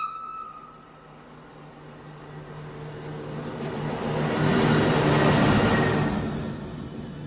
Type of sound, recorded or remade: recorded